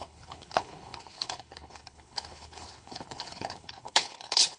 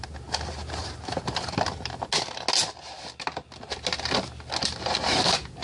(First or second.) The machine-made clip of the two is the first